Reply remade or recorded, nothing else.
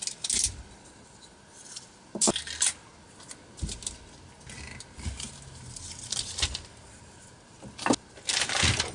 recorded